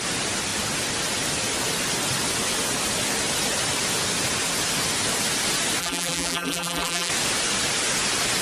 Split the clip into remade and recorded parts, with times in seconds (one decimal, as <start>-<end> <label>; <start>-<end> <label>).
0.0-5.8 recorded; 5.8-7.1 remade; 7.1-8.4 recorded